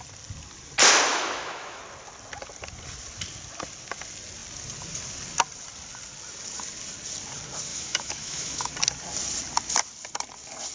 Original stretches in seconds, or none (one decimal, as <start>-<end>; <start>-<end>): 0.0-1.1; 1.8-7.7; 8.7-10.7